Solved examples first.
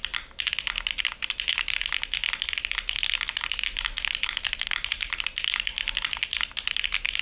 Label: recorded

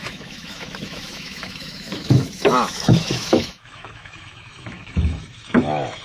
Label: remade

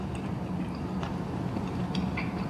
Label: recorded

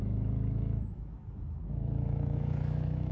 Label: remade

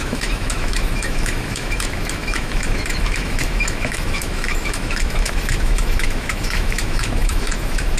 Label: remade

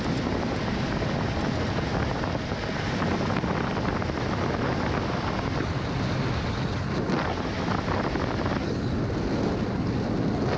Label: recorded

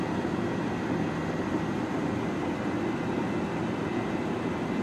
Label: recorded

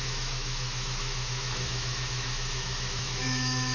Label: remade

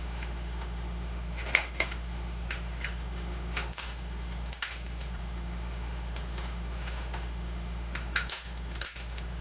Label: remade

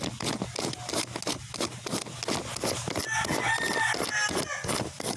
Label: recorded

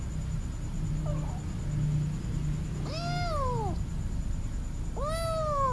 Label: recorded